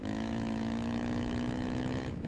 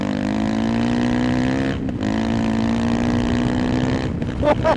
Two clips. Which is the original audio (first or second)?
second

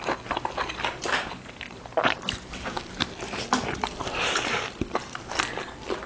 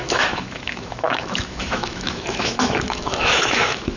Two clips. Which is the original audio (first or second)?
first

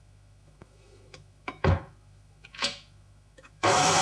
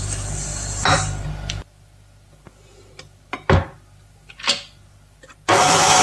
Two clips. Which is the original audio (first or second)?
second